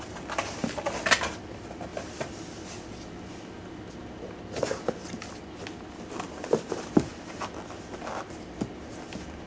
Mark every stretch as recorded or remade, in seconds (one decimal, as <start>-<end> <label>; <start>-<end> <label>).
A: 0.0-9.5 recorded